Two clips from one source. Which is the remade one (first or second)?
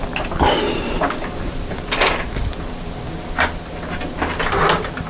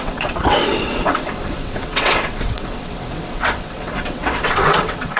second